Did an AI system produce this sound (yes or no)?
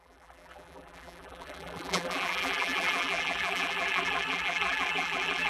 yes